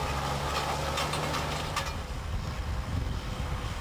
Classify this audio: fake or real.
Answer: real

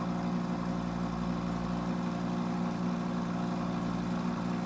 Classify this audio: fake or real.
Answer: real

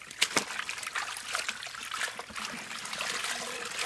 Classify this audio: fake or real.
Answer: real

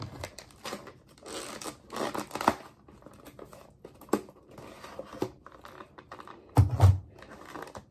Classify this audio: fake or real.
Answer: real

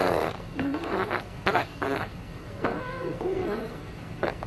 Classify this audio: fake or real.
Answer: fake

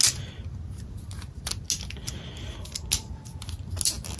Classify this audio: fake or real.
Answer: real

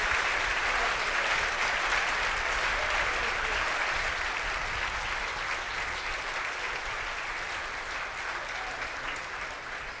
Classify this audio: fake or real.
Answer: real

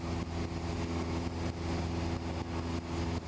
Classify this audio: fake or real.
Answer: real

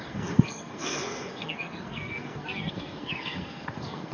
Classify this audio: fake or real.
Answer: fake